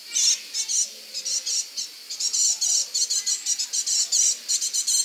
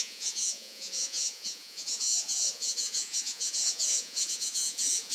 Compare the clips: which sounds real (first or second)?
first